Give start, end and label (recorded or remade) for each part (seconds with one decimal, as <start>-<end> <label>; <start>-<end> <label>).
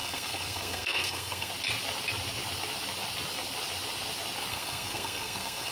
0.0-1.5 remade; 1.5-4.5 recorded; 4.5-5.7 remade